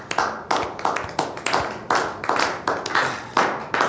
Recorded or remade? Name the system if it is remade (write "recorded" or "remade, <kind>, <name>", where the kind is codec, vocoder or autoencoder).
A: recorded